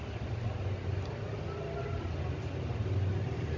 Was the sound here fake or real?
real